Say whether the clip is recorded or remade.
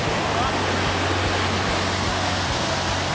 recorded